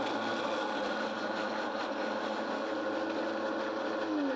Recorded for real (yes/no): yes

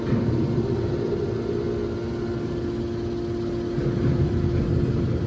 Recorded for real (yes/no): yes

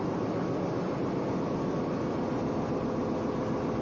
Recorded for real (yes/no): yes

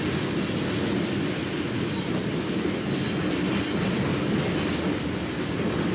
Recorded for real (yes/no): yes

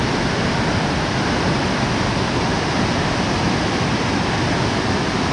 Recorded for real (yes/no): yes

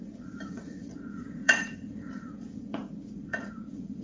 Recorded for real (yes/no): no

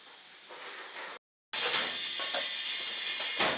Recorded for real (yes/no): yes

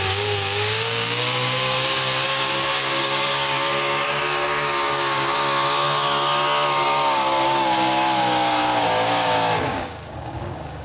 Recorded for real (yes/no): no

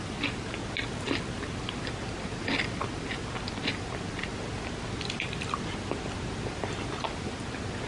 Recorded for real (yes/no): no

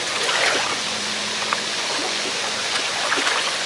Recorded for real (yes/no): no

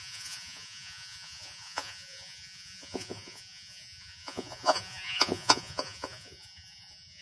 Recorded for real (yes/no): no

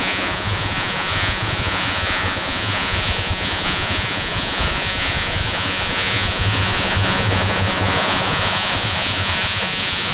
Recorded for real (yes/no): no